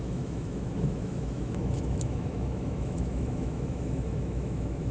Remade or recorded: remade